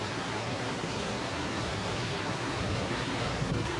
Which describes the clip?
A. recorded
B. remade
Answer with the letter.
B